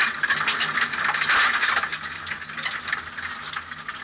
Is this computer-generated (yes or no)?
no